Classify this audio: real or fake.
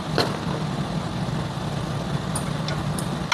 real